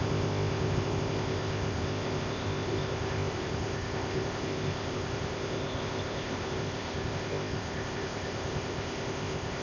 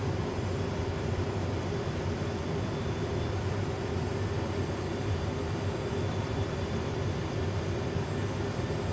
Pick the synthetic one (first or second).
first